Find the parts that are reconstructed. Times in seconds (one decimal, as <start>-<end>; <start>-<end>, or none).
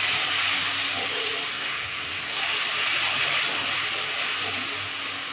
1.5-2.4